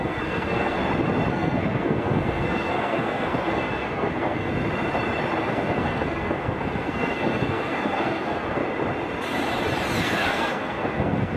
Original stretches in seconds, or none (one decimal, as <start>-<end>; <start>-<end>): 0.8-1.3; 4.5-5.4; 8.6-10.0